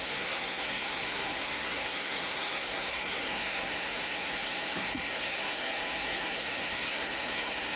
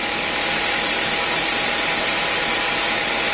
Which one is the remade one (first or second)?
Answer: first